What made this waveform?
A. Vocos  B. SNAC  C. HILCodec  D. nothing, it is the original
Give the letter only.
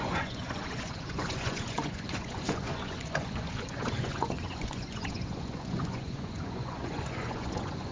A